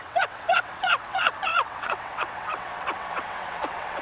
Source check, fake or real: fake